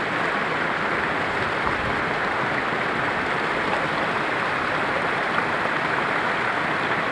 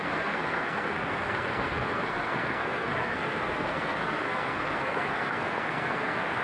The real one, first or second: first